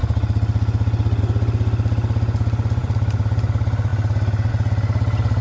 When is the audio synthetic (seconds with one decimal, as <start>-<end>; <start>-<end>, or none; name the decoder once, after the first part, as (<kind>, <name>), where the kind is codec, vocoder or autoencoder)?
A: 2.8-3.5 (vocoder, BigVGAN v2)